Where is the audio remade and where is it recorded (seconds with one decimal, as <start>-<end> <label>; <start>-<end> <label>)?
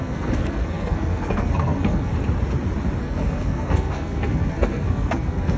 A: 0.0-2.1 remade; 2.1-3.0 recorded; 3.0-5.6 remade